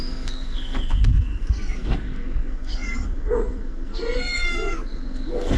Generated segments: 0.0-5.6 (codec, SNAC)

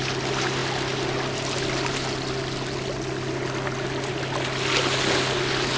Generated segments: none

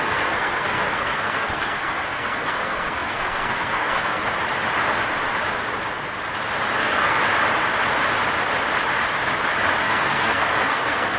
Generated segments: 0.0-4.2 (codec, SNAC); 6.8-7.2; 9.8-11.2

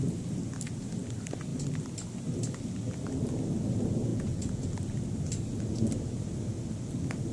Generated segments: 4.1-4.6 (vocoder, Vocos)

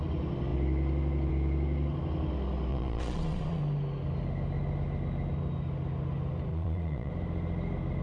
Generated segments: 2.7-3.6 (vocoder, Vocos); 6.5-7.1

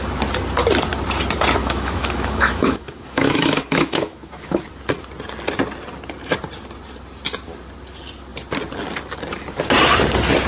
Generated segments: 1.6-4.6 (autoencoder, DAC-VAE)